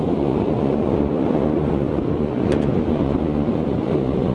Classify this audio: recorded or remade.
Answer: remade